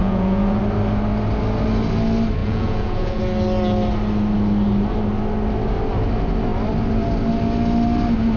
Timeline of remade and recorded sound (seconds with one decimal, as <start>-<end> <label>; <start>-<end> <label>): 0.0-0.6 remade; 0.6-2.4 recorded; 2.4-3.2 remade; 3.2-8.4 recorded